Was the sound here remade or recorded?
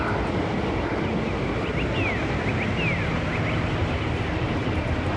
recorded